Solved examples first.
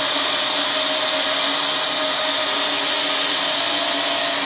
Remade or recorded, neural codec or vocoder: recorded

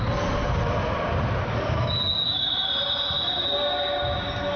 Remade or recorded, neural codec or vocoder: recorded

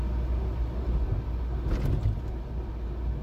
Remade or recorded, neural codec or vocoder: recorded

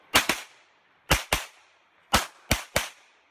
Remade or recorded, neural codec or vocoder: recorded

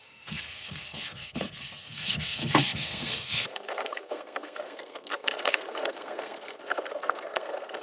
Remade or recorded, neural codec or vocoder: remade, codec, SNAC